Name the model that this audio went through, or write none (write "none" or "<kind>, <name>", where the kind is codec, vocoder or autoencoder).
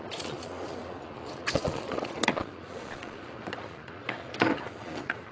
vocoder, Vocos